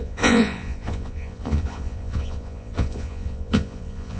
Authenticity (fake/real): fake